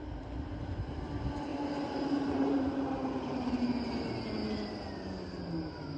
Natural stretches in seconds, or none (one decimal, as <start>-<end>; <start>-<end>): 0.0-1.5; 3.6-6.0